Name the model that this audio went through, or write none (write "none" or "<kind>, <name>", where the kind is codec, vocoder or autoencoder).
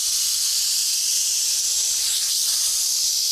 vocoder, BigVGAN v2